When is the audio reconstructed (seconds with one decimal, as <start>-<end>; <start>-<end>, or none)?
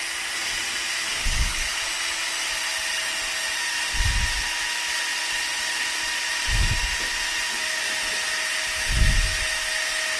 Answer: 1.2-1.8